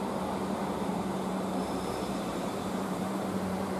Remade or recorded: remade